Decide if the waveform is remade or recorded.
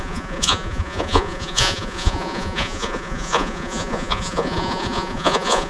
remade